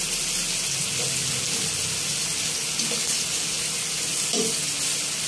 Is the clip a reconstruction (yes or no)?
no